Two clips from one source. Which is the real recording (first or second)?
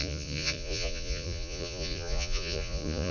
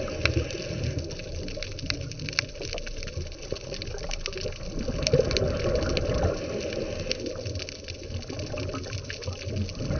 second